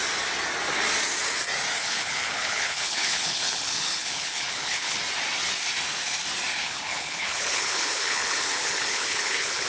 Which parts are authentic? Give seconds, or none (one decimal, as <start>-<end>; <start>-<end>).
0.0-1.8; 5.0-6.6